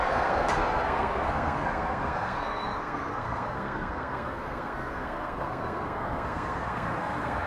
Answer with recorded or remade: remade